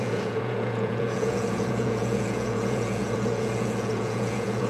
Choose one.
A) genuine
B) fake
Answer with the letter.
B